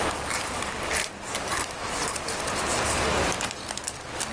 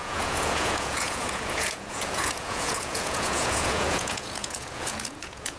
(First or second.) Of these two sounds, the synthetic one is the second